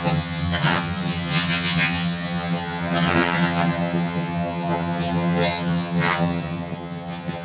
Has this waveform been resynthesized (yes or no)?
yes